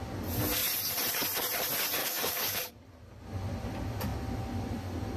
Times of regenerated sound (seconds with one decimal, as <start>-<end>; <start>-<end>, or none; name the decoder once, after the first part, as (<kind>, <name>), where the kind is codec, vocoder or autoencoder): 2.0-2.7 (codec, DAC)